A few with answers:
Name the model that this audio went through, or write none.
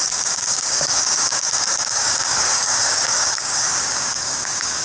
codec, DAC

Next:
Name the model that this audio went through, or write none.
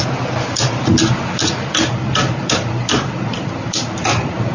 none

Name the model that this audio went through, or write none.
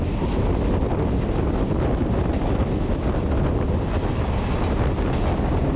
none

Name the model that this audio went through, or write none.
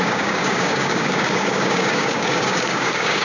codec, DAC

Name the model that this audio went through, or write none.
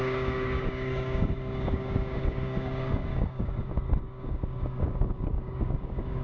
codec, DAC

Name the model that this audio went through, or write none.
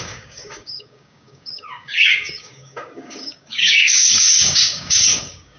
codec, DAC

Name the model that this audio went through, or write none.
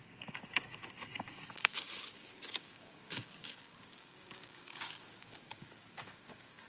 codec, DAC